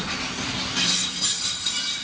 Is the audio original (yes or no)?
yes